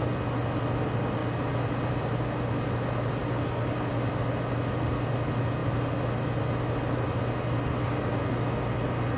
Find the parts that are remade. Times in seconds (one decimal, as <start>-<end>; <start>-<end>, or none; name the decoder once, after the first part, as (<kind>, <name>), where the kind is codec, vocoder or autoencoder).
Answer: none